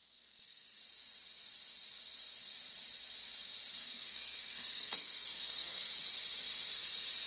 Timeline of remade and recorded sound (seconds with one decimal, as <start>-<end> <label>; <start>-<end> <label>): 0.0-0.8 remade; 0.8-3.8 recorded; 3.8-5.9 remade; 5.9-7.3 recorded